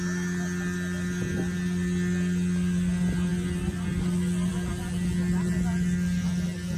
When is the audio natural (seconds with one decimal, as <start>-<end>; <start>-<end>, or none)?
0.0-6.8